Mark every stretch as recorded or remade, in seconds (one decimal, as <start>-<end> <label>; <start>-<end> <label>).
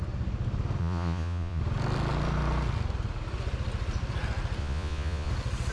0.0-0.8 recorded; 0.8-1.6 remade; 1.6-4.6 recorded; 4.6-5.3 remade; 5.3-5.7 recorded